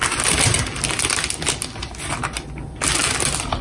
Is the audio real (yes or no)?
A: yes